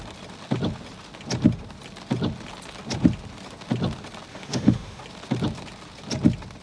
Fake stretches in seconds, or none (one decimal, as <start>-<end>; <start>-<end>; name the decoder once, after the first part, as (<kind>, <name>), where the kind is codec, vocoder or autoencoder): 4.3-5.0 (autoencoder, DAC-VAE)